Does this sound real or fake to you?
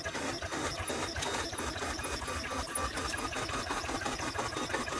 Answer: real